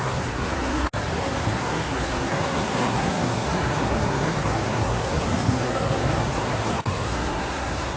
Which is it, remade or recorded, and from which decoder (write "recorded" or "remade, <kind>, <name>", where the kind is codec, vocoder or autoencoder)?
remade, codec, SNAC